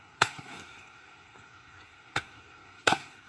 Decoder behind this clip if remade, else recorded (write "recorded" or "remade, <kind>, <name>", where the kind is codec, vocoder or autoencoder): remade, codec, SNAC